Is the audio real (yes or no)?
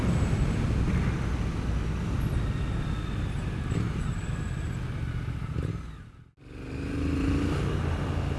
yes